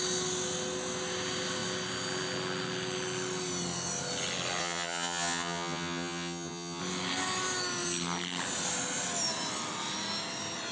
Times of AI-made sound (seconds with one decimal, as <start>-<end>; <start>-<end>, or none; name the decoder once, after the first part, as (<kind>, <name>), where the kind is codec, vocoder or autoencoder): 4.6-6.8 (vocoder, HiFi-GAN)